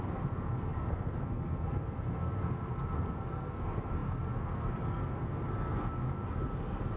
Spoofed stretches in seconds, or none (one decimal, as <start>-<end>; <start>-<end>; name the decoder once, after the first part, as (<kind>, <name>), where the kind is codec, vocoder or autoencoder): 0.0-7.0 (codec, SNAC)